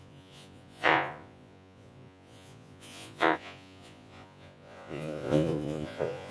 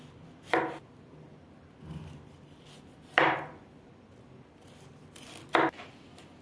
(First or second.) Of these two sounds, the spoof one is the first